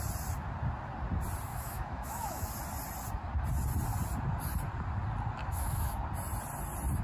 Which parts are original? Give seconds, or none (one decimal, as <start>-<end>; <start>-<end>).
0.0-1.5; 2.5-5.4; 6.0-7.0